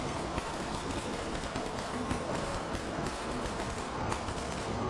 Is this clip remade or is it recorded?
remade